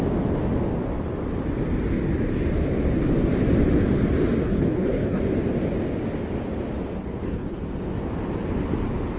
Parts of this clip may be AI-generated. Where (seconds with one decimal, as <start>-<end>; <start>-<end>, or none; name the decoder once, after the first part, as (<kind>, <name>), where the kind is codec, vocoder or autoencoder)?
4.4-5.2 (codec, HILCodec); 7.0-7.6